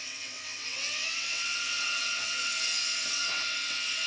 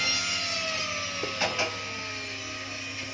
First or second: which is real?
second